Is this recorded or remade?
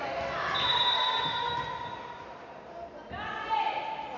recorded